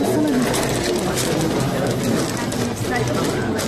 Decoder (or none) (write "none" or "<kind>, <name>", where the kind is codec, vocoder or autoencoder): none